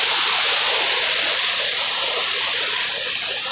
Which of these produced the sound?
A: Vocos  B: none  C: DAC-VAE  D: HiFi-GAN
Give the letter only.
B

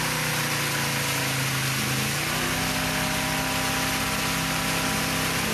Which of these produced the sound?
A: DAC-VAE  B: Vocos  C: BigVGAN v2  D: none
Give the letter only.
D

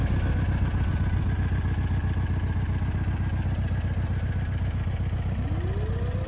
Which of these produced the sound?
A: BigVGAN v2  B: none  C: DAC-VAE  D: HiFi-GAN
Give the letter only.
B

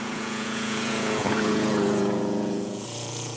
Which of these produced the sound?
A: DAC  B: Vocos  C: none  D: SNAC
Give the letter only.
B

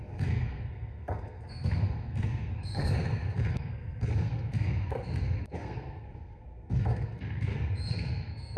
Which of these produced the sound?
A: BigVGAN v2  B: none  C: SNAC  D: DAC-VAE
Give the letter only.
C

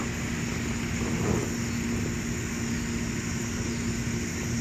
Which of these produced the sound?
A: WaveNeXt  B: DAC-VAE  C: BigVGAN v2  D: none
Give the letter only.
D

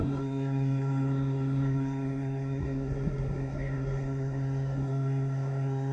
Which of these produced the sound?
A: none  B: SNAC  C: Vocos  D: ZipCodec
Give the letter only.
B